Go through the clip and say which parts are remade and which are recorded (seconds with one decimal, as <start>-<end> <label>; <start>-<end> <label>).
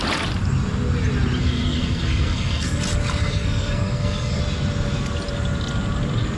0.0-1.4 recorded; 1.4-2.8 remade; 2.8-3.2 recorded; 3.2-4.4 remade; 4.4-6.4 recorded